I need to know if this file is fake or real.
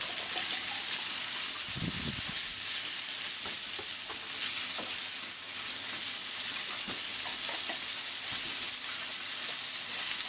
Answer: real